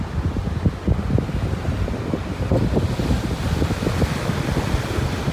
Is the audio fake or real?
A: real